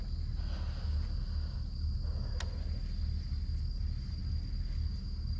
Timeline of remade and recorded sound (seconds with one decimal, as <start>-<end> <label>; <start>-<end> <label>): 0.0-5.4 recorded